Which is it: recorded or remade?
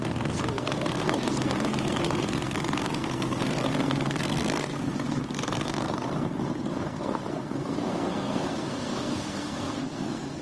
remade